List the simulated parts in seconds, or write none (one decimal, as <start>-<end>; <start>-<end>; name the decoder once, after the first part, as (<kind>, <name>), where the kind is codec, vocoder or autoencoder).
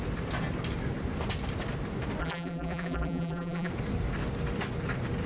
2.2-3.7 (vocoder, BigVGAN v2)